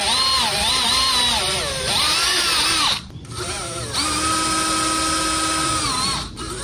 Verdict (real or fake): real